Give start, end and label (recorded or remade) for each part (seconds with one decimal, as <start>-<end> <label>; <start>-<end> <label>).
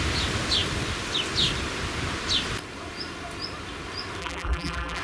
0.0-4.2 recorded; 4.2-5.0 remade